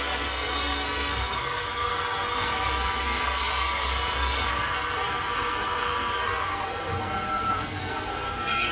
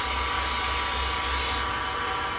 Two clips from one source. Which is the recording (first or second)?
second